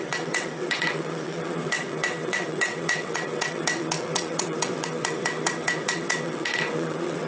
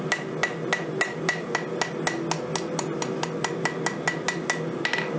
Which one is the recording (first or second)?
second